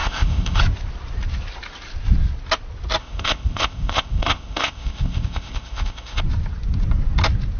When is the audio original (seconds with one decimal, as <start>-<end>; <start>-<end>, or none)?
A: 0.6-3.0; 6.2-7.6